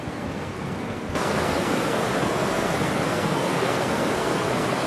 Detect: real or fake fake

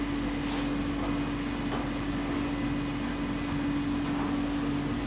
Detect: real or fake real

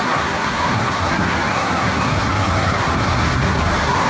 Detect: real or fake fake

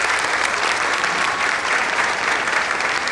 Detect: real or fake fake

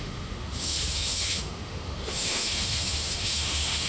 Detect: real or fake fake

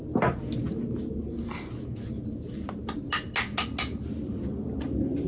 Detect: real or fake real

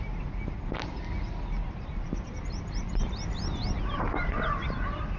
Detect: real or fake real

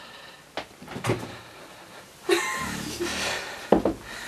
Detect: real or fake real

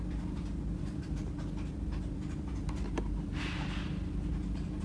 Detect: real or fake real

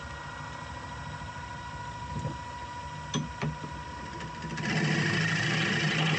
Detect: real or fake real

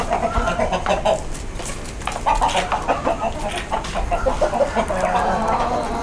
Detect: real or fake real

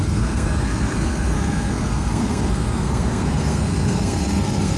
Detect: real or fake fake